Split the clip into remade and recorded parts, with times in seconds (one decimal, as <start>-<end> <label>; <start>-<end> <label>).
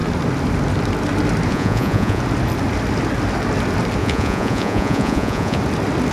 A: 0.0-1.5 recorded; 1.5-2.2 remade; 2.2-4.0 recorded; 4.0-5.6 remade; 5.6-6.1 recorded